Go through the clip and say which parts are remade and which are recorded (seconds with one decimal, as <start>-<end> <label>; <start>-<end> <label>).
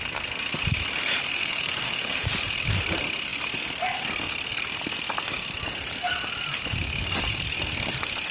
0.0-1.4 recorded; 1.4-2.3 remade; 2.3-8.3 recorded